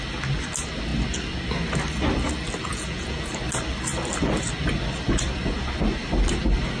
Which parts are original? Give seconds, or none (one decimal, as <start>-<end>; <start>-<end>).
0.0-2.7; 3.3-6.8